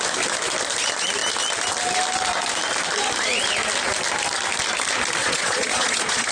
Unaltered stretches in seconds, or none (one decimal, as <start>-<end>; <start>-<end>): 0.0-5.2